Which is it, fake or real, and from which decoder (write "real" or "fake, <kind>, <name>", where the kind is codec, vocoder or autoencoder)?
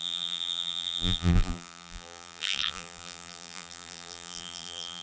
fake, vocoder, BigVGAN v2